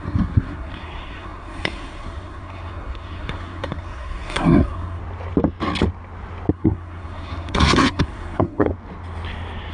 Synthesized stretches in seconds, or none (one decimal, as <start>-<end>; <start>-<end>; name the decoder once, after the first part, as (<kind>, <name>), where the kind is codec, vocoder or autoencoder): 0.0-5.0 (codec, SNAC); 6.5-8.7